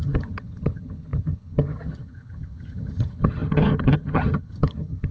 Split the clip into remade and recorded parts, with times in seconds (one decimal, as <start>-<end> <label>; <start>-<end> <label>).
0.0-5.1 remade